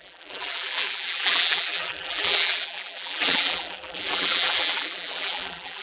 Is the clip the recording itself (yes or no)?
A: no